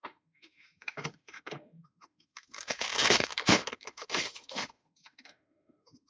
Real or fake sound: fake